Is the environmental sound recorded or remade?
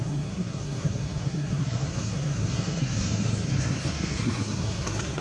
remade